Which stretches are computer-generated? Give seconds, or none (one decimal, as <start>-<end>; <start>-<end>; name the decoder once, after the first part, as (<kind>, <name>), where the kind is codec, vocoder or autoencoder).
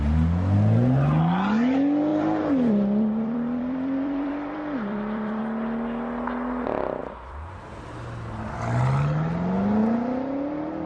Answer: 2.1-5.4 (vocoder, BigVGAN v2); 7.0-7.7